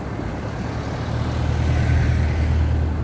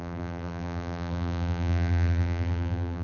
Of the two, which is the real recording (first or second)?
first